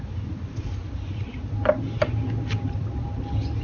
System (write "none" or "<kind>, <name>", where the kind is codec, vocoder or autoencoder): none